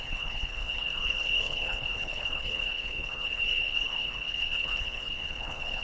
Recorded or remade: remade